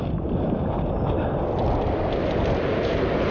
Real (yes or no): yes